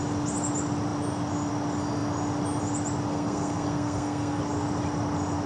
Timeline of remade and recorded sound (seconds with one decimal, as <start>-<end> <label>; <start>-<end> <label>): 0.0-3.1 recorded; 3.1-4.4 remade; 4.4-5.5 recorded